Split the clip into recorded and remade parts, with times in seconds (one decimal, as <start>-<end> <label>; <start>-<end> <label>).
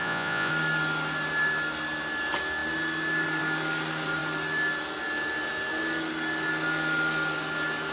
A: 0.0-0.5 remade; 0.5-7.9 recorded